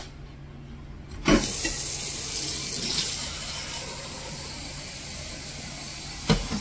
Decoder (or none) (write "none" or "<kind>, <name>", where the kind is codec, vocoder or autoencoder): none